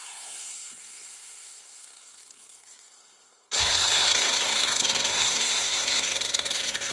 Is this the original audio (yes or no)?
no